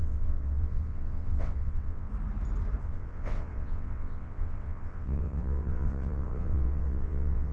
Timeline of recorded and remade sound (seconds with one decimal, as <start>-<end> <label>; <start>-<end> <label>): 0.0-2.1 remade; 2.1-2.8 recorded; 2.8-7.5 remade